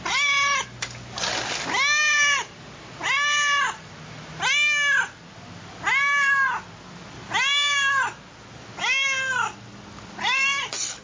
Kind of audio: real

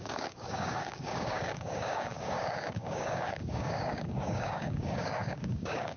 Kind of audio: fake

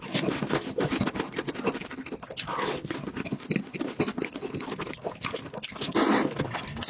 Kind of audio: real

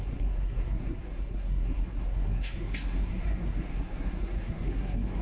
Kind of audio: fake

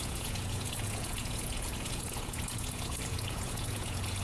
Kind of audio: fake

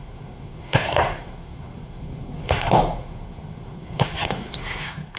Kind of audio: fake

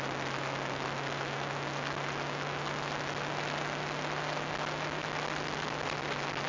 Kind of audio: real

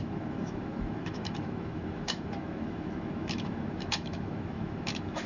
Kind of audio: fake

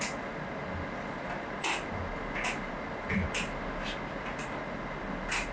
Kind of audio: real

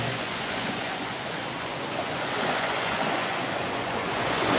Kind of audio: fake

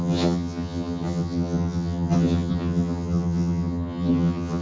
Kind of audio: fake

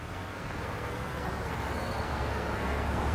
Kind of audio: fake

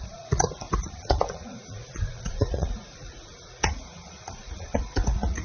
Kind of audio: fake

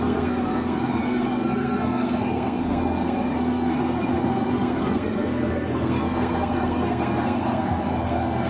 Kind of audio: fake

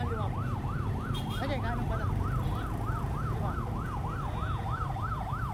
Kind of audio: real